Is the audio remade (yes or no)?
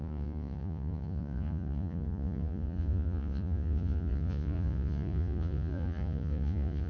yes